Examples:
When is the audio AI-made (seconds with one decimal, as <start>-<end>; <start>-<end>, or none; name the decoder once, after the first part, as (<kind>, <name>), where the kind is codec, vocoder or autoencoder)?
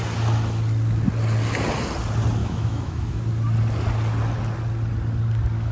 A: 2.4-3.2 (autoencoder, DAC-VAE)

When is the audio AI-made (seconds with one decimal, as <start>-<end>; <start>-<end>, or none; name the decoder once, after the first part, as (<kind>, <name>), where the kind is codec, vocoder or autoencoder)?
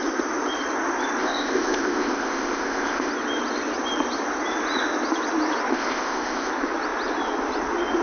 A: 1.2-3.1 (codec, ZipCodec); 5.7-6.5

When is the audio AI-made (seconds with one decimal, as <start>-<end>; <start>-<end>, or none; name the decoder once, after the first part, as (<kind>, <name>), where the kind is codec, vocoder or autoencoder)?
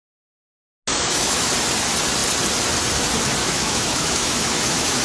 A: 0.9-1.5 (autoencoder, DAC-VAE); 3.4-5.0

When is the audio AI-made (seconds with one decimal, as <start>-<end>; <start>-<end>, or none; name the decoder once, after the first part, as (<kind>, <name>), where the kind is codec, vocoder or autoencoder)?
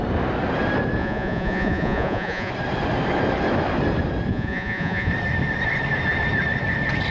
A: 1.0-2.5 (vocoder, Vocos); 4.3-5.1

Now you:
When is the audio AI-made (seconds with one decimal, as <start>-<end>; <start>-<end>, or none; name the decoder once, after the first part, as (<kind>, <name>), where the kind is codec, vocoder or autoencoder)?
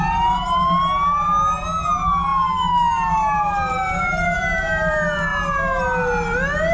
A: none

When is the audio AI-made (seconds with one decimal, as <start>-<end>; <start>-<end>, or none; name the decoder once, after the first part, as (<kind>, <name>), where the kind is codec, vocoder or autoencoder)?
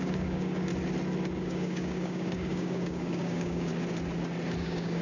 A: 0.0-0.7 (codec, DAC); 1.4-3.7; 4.6-5.0